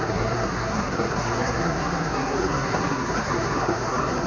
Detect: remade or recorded remade